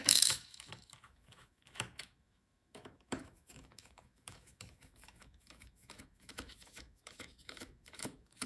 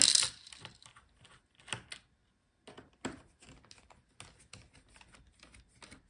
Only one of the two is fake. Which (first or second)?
first